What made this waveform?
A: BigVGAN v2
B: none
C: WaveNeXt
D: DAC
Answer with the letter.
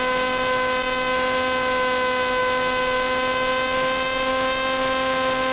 B